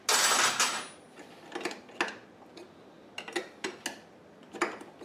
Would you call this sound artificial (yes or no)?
no